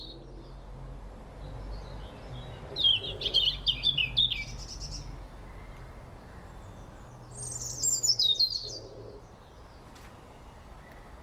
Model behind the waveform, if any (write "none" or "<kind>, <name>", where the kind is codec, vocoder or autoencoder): none